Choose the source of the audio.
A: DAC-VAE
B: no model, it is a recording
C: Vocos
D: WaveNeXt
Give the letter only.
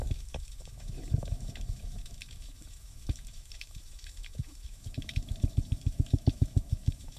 A